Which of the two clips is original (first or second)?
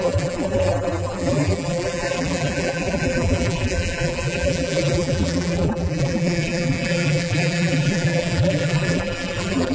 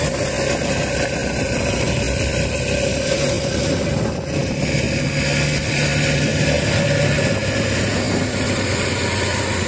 second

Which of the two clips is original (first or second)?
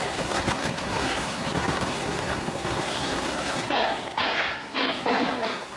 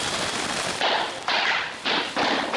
second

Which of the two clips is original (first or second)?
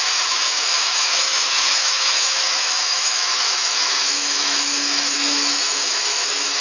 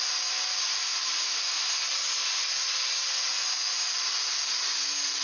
second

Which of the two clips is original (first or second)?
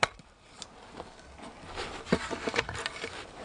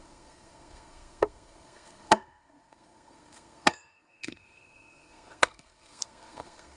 first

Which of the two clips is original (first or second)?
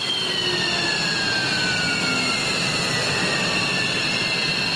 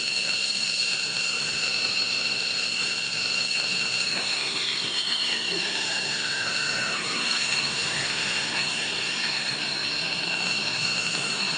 first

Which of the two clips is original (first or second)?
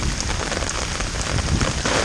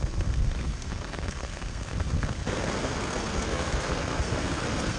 first